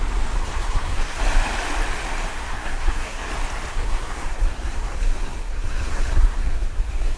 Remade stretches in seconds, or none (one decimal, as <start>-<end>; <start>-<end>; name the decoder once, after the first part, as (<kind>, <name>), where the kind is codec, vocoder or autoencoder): 0.4-1.2 (codec, SNAC); 2.3-3.3; 3.7-7.2